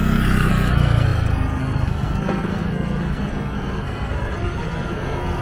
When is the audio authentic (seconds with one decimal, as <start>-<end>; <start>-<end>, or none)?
none